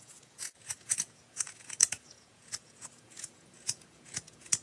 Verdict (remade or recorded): remade